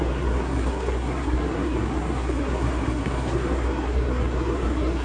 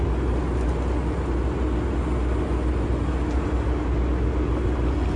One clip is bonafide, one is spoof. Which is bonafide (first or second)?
second